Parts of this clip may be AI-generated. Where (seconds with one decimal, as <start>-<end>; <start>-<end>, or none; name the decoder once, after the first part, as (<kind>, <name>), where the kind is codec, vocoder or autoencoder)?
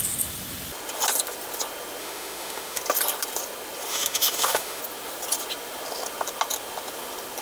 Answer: 2.0-2.8 (autoencoder, DAC-VAE); 3.9-4.8